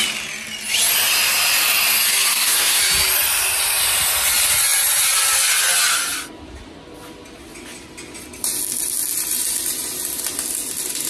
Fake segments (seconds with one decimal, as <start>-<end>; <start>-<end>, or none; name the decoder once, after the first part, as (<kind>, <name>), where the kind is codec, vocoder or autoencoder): 2.3-2.8 (codec, SNAC)